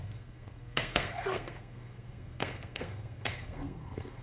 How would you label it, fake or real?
fake